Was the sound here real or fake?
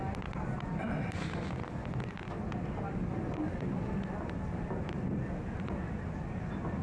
real